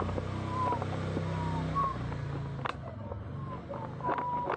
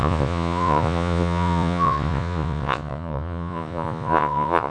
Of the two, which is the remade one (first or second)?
second